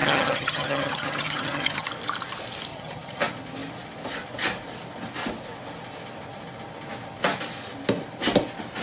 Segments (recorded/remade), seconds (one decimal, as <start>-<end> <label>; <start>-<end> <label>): 0.0-1.9 remade; 1.9-2.7 recorded; 2.7-3.2 remade; 3.2-8.8 recorded